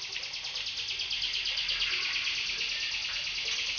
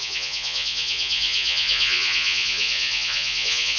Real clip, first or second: first